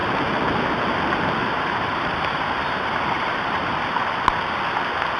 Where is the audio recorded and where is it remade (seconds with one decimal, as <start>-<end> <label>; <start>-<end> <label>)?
0.0-1.4 recorded; 1.4-3.8 remade; 3.8-5.2 recorded